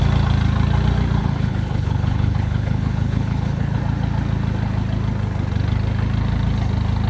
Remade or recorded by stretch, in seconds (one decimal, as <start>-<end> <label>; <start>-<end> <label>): 0.0-1.2 recorded; 1.2-3.8 remade; 3.8-7.1 recorded